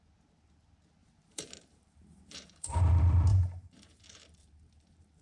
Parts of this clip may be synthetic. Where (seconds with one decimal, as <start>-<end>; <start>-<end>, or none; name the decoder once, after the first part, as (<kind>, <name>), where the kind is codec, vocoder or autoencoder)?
1.0-2.8 (vocoder, BigVGAN v2); 3.3-5.2